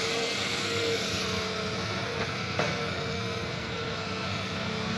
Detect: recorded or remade remade